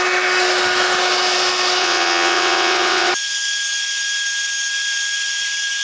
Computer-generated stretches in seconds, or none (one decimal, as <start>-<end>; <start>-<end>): 1.8-3.1

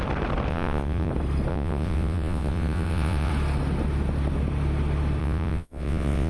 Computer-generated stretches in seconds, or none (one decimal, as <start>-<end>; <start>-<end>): 0.5-1.1; 1.5-3.3; 5.2-6.3

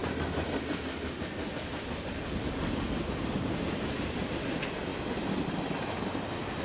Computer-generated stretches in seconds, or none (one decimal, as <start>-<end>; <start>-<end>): none

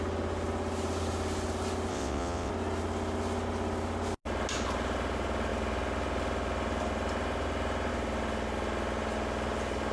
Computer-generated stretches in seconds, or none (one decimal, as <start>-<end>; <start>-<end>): 1.9-2.5

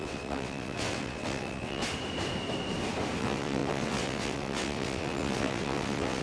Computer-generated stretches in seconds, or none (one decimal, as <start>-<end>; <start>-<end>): 0.0-1.8; 3.2-6.2

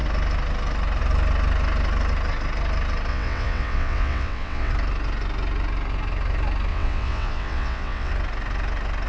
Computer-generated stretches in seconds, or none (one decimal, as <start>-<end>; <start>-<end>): 3.1-4.7; 6.7-8.1

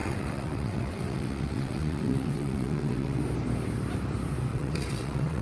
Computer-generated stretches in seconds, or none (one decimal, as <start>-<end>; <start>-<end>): 0.0-3.2; 4.5-5.4